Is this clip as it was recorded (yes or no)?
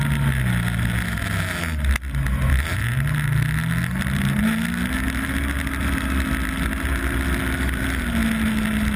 yes